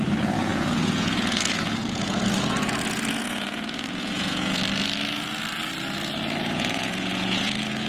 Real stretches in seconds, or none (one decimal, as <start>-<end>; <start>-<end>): 4.6-6.4

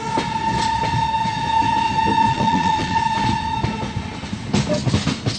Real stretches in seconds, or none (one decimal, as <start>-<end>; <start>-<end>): 0.0-2.3; 3.0-5.4

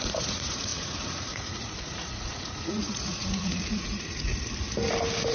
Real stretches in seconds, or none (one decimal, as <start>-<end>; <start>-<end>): 4.3-5.3

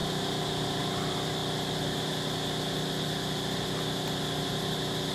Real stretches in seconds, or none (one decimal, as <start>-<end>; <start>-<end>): 0.0-5.1

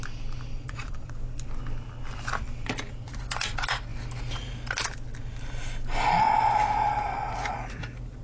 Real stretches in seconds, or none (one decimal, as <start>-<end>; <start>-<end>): 0.0-0.5; 1.1-8.2